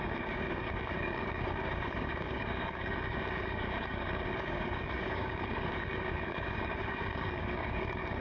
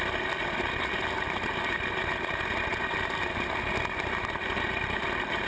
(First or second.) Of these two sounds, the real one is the second